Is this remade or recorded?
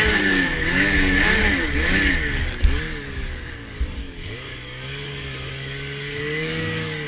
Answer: remade